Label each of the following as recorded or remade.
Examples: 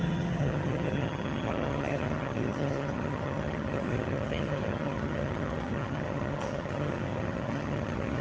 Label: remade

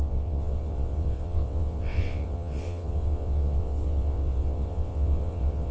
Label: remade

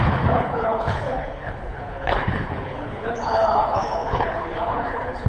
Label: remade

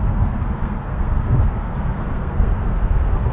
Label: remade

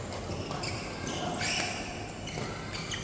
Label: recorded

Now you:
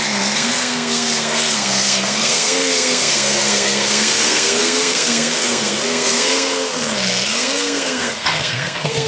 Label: remade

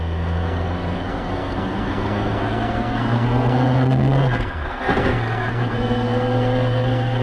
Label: remade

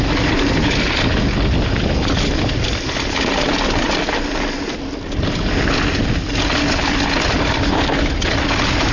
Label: recorded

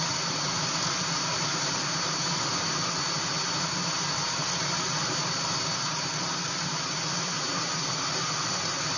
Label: recorded